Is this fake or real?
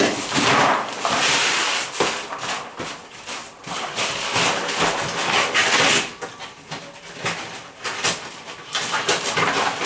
real